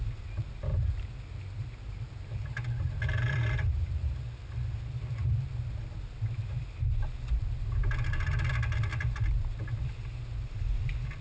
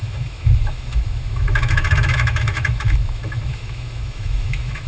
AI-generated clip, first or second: second